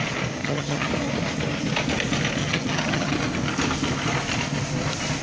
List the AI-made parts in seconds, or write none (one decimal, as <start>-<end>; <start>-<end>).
0.4-0.9; 2.4-3.1